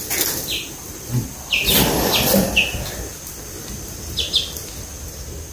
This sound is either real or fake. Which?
real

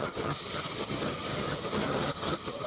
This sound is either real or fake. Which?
fake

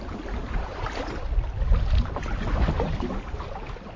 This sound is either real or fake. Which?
real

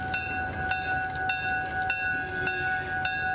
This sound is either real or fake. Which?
real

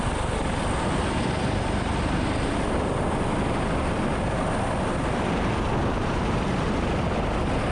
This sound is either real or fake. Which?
real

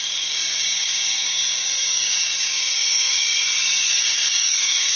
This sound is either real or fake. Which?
fake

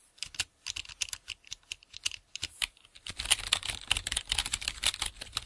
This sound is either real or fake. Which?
real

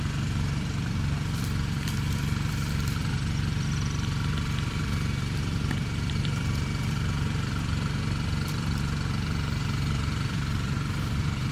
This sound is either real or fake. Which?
fake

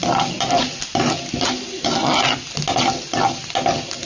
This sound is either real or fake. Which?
real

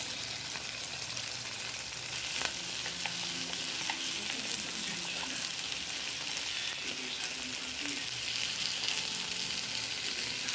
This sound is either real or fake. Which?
real